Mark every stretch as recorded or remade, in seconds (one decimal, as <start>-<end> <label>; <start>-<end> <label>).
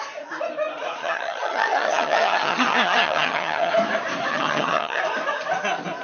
0.0-1.0 recorded; 1.0-3.7 remade; 3.7-4.3 recorded; 4.3-5.0 remade; 5.0-6.0 recorded